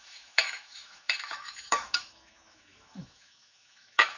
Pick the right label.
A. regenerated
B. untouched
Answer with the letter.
A